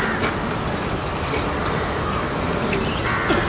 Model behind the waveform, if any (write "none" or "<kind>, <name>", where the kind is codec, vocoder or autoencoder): none